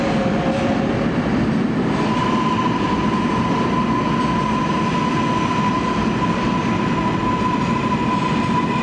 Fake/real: real